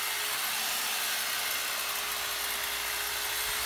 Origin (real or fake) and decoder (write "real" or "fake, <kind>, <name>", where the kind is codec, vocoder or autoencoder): real